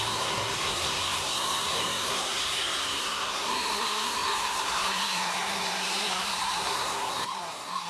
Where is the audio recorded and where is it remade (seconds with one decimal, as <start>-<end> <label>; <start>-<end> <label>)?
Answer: 0.0-7.9 remade